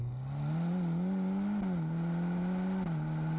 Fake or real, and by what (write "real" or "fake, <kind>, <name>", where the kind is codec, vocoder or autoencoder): real